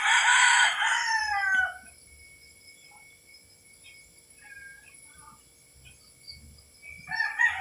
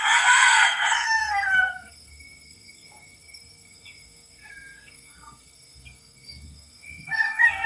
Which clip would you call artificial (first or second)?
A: second